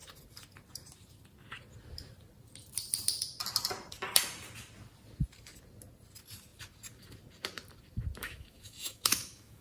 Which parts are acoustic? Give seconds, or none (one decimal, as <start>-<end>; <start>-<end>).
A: 0.0-8.2